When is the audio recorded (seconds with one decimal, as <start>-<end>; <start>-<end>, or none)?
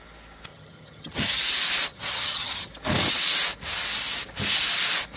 0.0-0.5; 1.4-1.9; 2.7-5.2